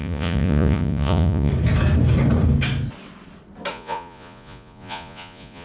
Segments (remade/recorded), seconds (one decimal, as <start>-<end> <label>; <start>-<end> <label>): 0.0-1.5 remade; 1.5-3.7 recorded; 3.7-5.6 remade